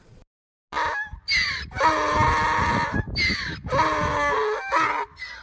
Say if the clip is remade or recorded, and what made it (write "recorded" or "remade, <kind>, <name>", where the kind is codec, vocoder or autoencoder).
recorded